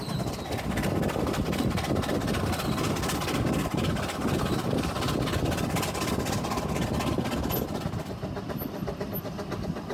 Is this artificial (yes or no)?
no